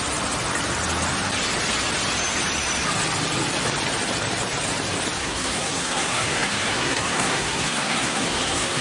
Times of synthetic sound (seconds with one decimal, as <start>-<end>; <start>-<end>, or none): 5.2-8.8